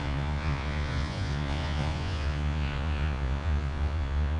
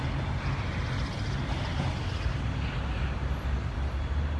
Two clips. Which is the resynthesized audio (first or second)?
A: first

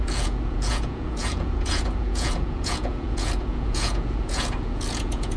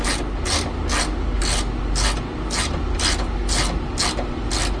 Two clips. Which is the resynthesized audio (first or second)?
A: first